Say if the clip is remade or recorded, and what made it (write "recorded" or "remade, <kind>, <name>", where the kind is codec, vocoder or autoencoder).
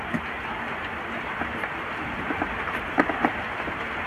recorded